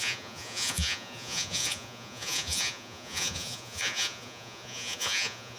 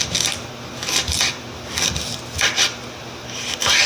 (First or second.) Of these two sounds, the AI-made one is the first